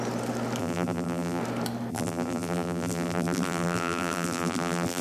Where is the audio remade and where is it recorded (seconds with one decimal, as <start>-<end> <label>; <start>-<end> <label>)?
0.0-0.6 recorded; 0.6-1.4 remade; 1.4-1.9 recorded; 1.9-5.0 remade